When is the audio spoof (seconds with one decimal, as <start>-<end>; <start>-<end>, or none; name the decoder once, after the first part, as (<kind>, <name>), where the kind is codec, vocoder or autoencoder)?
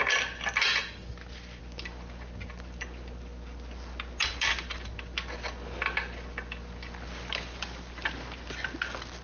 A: none